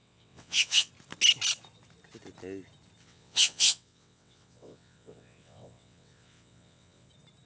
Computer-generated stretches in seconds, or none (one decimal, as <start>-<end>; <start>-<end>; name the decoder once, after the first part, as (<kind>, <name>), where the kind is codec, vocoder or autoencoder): 0.0-0.9 (vocoder, WaveNeXt); 3.0-7.1